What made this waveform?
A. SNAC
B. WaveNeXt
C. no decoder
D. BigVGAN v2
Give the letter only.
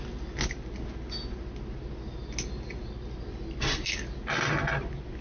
C